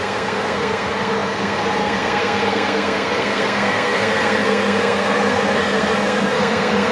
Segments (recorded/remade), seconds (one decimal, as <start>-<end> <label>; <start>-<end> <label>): 0.0-6.9 remade